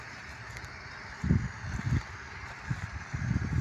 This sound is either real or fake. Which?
real